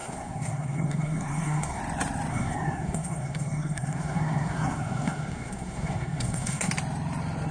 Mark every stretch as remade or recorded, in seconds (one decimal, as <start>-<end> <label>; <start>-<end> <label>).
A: 0.0-1.8 remade; 1.8-2.3 recorded; 2.3-6.7 remade; 6.7-7.5 recorded

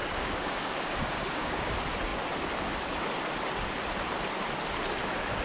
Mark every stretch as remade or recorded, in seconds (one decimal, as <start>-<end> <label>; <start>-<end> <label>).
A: 0.0-1.7 remade; 1.7-5.4 recorded

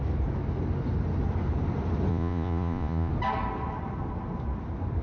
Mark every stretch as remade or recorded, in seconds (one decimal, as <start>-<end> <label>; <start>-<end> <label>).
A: 0.0-2.1 recorded; 2.1-3.1 remade; 3.1-5.0 recorded

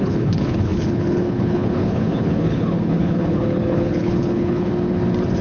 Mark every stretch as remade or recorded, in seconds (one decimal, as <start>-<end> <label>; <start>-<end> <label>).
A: 0.0-4.7 remade; 4.7-5.4 recorded

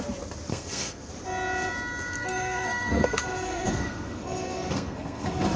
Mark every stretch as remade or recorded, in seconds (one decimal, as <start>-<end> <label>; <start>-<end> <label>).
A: 0.0-0.5 recorded; 0.5-1.1 remade; 1.1-2.2 recorded; 2.2-5.6 remade

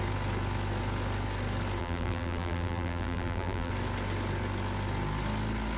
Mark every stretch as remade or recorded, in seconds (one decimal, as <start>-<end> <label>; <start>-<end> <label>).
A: 0.0-1.8 recorded; 1.8-3.7 remade; 3.7-5.8 recorded

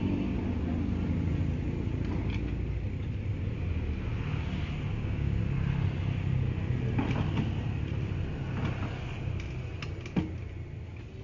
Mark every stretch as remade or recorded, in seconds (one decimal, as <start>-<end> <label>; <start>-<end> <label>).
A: 0.0-4.9 recorded; 4.9-5.4 remade; 5.4-11.2 recorded

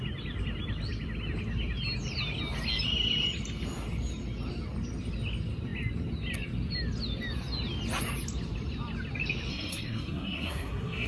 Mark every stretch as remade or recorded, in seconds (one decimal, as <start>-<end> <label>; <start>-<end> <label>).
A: 0.0-9.5 recorded; 9.5-11.1 remade